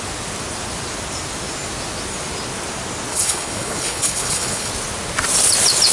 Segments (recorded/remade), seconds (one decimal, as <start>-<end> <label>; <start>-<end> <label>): 0.0-3.1 recorded; 3.1-4.7 remade; 4.7-5.9 recorded